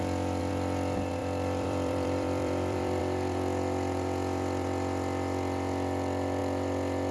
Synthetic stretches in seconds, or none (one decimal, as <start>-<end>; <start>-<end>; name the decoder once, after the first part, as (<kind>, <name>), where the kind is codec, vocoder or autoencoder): 1.2-3.0 (vocoder, BigVGAN v2)